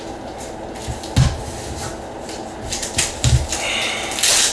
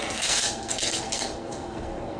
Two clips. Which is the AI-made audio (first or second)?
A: second